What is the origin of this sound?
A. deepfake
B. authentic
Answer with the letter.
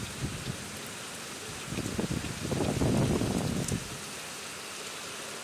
B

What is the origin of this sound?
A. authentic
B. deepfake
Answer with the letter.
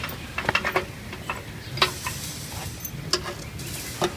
A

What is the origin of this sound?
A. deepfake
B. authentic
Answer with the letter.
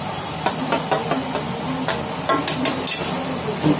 B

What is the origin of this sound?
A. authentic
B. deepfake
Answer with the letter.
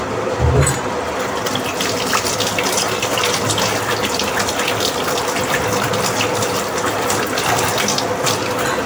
A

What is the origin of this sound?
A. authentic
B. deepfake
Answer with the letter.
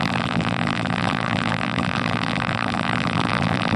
B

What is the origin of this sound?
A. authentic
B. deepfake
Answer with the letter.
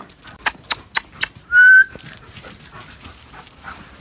A